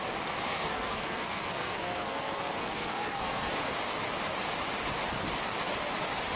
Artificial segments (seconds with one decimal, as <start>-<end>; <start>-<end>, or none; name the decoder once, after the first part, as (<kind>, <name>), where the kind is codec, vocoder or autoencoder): 0.5-3.6 (codec, SNAC)